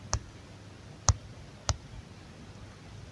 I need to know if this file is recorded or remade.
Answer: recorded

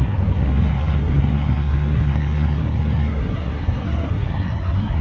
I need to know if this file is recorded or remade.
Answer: remade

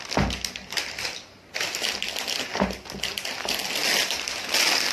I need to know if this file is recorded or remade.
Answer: recorded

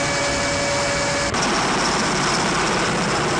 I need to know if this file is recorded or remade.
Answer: recorded